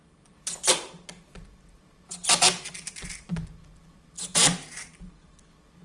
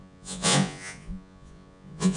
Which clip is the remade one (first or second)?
second